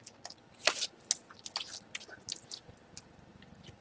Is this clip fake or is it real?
real